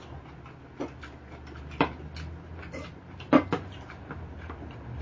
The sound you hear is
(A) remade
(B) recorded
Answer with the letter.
B